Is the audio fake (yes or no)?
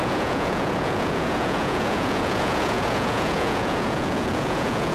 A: yes